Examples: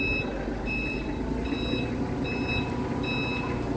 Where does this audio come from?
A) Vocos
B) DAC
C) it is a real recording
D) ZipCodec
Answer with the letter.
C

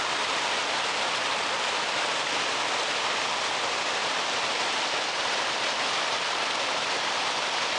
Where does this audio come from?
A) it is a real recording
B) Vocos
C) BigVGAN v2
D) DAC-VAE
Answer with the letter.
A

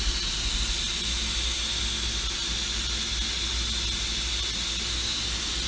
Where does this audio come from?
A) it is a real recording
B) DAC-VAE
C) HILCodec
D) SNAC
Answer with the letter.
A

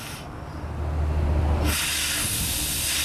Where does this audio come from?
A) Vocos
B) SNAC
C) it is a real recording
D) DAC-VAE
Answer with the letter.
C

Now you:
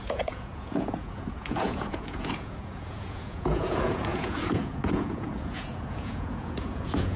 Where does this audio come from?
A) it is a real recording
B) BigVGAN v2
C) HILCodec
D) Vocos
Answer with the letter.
D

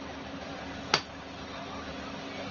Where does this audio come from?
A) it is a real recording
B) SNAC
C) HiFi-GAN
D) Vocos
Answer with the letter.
A